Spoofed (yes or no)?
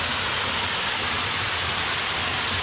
no